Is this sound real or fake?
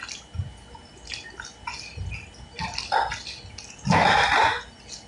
real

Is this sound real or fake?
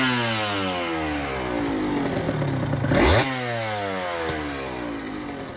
real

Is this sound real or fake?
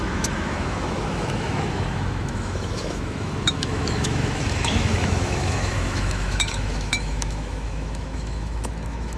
fake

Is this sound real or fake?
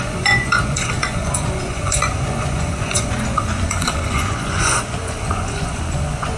fake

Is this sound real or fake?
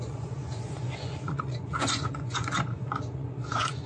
fake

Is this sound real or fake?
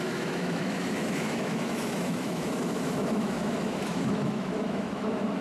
fake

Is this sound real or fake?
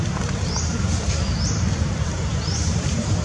fake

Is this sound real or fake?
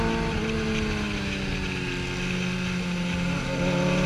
real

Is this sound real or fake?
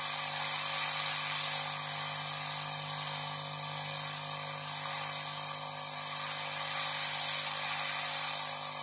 real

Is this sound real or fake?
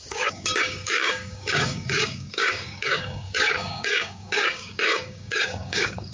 fake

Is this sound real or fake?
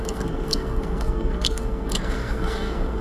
fake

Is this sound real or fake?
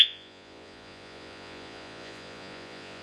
fake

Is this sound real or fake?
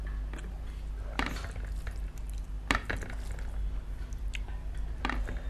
real